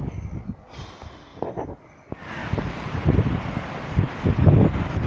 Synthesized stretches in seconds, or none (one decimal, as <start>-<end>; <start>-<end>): 1.3-1.8; 2.4-3.0